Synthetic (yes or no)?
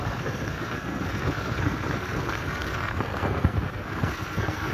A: yes